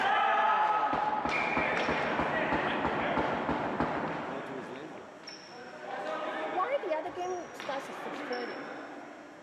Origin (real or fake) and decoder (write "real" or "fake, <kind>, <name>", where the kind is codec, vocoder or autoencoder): real